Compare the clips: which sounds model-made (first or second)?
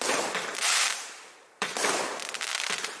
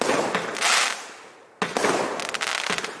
first